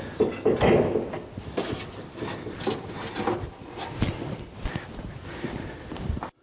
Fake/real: real